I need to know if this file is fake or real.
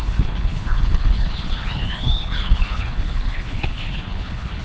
fake